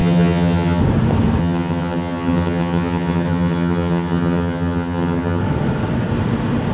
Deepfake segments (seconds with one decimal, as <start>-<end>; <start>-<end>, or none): 0.0-0.8; 1.4-5.4